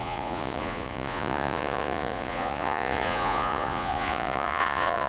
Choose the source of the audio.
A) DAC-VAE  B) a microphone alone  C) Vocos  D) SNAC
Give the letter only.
C